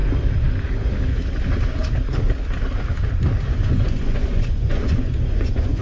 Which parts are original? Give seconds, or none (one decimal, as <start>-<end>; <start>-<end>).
0.0-3.5